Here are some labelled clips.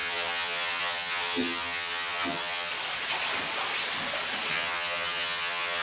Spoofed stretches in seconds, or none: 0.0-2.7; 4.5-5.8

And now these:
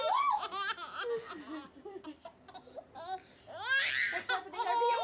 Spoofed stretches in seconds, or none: 2.2-3.4

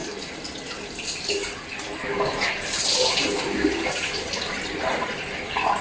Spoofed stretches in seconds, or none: none

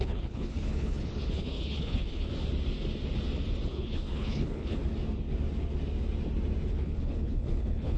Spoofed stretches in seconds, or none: 0.0-2.3; 3.7-4.8; 6.7-8.0

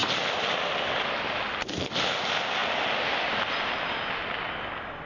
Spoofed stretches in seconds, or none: none